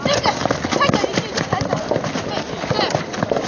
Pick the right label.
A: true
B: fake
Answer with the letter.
A